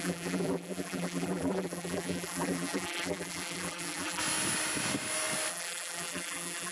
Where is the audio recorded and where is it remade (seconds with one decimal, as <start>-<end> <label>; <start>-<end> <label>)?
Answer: 0.0-4.2 remade; 4.2-5.5 recorded; 5.5-6.7 remade

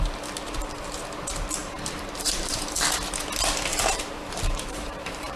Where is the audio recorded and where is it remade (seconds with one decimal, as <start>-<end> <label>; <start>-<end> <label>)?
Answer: 0.0-1.6 recorded; 1.6-2.7 remade; 2.7-3.7 recorded; 3.7-5.4 remade

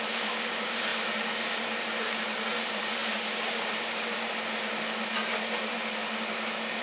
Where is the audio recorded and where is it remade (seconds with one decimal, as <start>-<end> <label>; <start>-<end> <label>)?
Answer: 0.0-6.8 remade

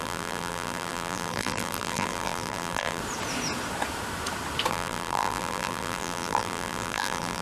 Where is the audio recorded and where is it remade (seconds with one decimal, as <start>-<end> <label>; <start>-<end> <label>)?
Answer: 0.0-3.0 remade; 3.0-4.7 recorded; 4.7-7.4 remade

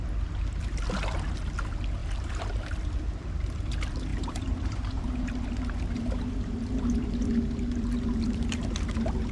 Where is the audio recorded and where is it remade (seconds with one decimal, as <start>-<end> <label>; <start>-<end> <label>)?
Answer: 0.0-2.0 recorded; 2.0-2.9 remade; 2.9-4.1 recorded; 4.1-7.1 remade; 7.1-9.3 recorded

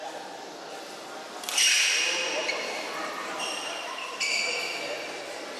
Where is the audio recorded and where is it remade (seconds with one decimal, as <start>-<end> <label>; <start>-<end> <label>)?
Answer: 0.0-3.2 recorded; 3.2-4.4 remade; 4.4-5.6 recorded

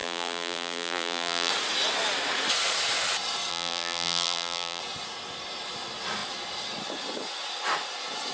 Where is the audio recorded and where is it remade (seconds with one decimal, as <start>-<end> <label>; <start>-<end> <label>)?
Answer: 0.0-1.5 remade; 1.5-3.5 recorded; 3.5-4.8 remade; 4.8-8.3 recorded